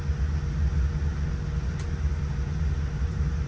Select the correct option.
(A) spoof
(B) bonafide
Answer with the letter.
B